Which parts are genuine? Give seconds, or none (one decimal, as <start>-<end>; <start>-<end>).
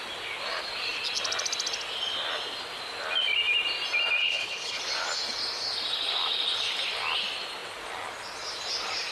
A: 0.0-4.2; 4.8-9.1